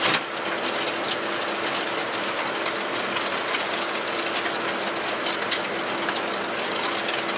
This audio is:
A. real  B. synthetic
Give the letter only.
A